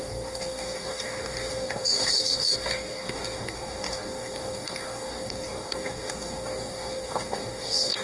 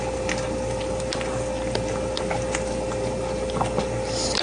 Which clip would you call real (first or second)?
second